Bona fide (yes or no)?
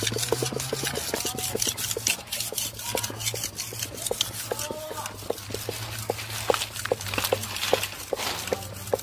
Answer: yes